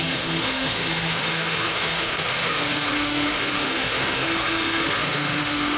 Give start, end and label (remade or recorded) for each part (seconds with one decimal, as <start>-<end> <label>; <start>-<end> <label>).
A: 0.0-5.8 remade